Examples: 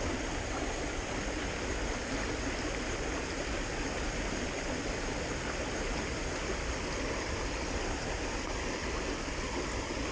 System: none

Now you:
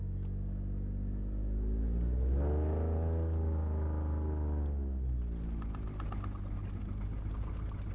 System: none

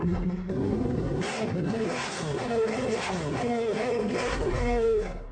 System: codec, SNAC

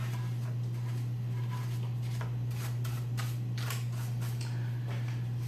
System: none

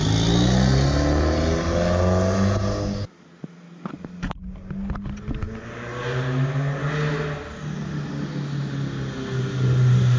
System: none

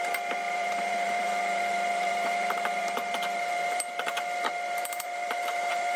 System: vocoder, BigVGAN v2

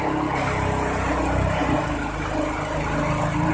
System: none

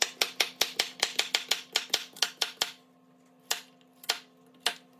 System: none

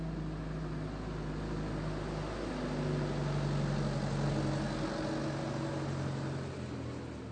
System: none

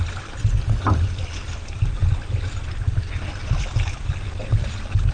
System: none